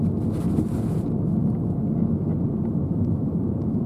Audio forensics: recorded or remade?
recorded